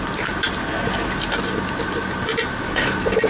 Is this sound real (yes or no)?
yes